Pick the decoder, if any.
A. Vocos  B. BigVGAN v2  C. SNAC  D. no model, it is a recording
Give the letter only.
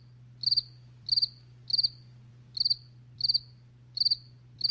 D